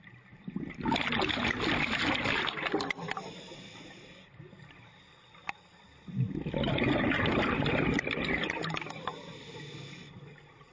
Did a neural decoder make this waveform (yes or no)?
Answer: no